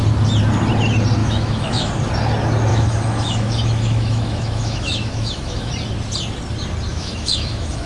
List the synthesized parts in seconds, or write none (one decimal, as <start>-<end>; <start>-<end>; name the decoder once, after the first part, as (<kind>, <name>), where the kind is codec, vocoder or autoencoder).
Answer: 1.2-1.9 (autoencoder, DAC-VAE); 2.7-5.7; 6.9-7.9